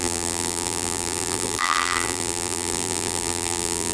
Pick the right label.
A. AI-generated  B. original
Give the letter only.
A